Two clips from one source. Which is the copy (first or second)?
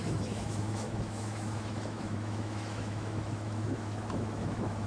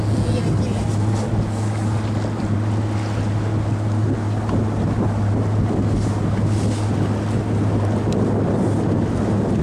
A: first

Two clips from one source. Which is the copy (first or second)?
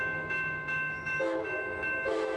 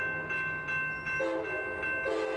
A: first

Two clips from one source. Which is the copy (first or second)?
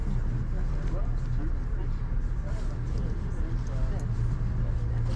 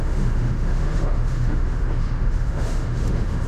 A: second